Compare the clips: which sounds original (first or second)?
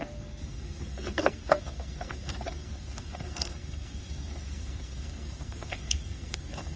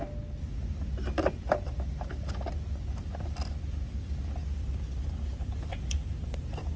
second